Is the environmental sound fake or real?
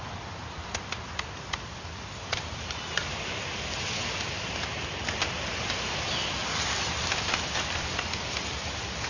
real